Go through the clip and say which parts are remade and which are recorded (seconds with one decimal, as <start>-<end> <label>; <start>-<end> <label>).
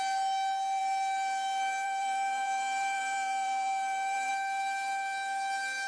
0.0-0.8 recorded; 0.8-4.3 remade; 4.3-5.9 recorded